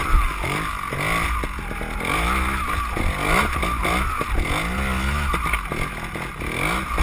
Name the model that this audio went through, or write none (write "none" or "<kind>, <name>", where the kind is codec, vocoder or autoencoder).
none